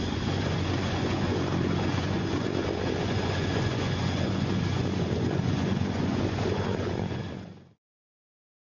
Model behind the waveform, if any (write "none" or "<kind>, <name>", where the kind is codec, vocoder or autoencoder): vocoder, Vocos